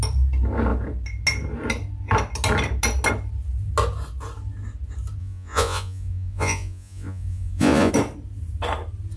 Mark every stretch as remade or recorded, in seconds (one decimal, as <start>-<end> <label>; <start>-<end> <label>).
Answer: 0.0-5.2 recorded; 5.2-7.9 remade; 7.9-9.2 recorded